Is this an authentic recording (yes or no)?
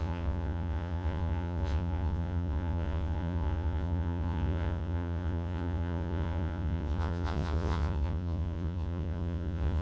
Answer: no